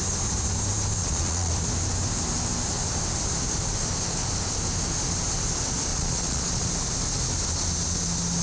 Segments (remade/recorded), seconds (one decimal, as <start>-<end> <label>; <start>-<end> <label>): 0.0-1.0 recorded; 1.0-1.5 remade; 1.5-5.9 recorded; 5.9-6.7 remade; 6.7-8.4 recorded